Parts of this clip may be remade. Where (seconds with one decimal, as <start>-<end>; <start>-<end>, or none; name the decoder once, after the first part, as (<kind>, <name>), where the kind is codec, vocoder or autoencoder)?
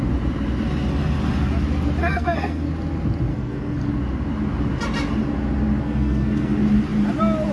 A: 2.0-2.7 (codec, SNAC); 3.3-3.9; 5.8-6.5